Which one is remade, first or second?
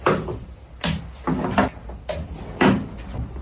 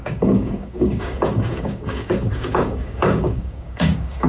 second